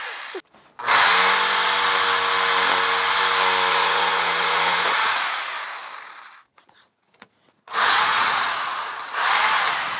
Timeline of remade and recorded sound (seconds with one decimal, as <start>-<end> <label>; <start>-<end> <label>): 0.0-3.7 recorded; 3.7-5.5 remade; 5.5-6.5 recorded; 6.5-8.9 remade; 8.9-10.0 recorded